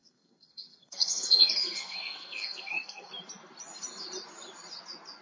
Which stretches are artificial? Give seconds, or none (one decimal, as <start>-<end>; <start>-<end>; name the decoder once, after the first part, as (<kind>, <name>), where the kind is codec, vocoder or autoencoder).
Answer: 0.0-3.1 (codec, SNAC)